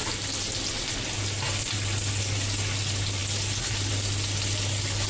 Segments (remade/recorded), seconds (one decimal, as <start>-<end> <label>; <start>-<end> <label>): 0.0-5.1 recorded